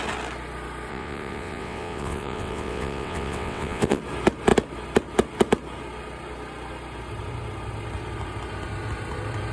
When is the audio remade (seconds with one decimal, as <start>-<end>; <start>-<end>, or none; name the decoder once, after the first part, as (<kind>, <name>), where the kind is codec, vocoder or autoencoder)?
0.9-4.0 (vocoder, WaveNeXt)